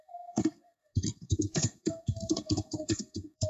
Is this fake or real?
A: fake